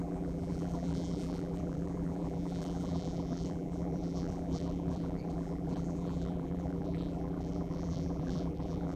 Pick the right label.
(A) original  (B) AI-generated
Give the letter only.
B